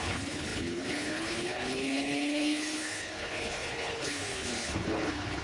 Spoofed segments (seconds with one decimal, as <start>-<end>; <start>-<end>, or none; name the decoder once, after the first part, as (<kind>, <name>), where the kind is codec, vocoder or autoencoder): 0.0-5.4 (codec, HILCodec)